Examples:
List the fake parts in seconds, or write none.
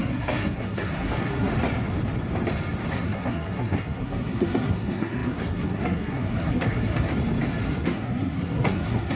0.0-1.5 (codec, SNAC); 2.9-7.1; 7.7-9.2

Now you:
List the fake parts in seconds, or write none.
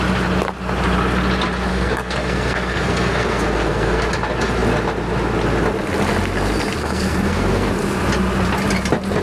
1.7-4.1 (codec, SNAC); 6.8-7.7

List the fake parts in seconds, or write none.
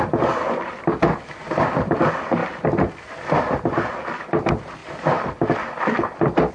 none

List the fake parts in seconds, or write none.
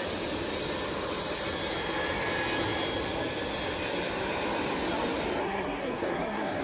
5.4-6.6 (codec, SNAC)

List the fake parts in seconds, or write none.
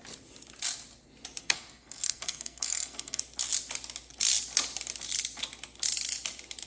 1.4-3.2 (codec, SNAC)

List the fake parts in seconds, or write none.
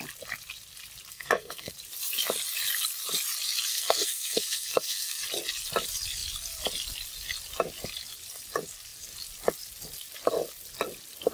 1.1-1.7 (codec, SNAC); 3.7-5.2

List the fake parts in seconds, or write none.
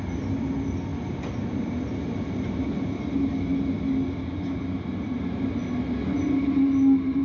none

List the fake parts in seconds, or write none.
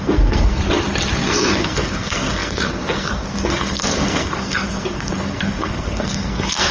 0.0-0.6 (codec, SNAC); 1.2-6.7